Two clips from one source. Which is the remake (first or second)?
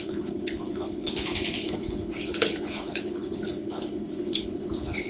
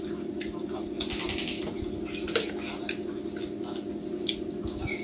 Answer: first